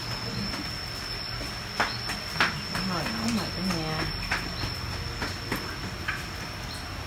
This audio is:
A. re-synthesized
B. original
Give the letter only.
B